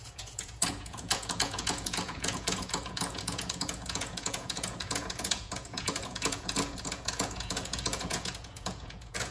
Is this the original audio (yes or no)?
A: no